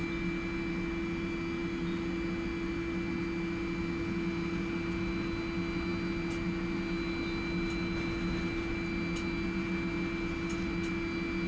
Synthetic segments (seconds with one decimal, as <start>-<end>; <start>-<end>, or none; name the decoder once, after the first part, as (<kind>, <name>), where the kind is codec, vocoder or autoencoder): none